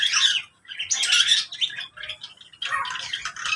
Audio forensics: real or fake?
real